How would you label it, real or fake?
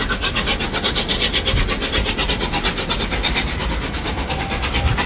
real